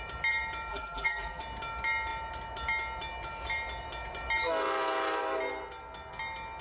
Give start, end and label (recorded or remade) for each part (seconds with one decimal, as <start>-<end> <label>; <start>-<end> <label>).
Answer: 0.0-0.7 recorded; 0.7-1.4 remade; 1.4-6.6 recorded